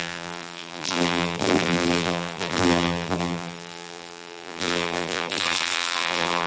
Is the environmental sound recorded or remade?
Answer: remade